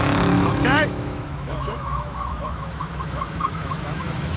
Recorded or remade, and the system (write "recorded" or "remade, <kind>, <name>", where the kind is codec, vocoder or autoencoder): remade, autoencoder, DAC-VAE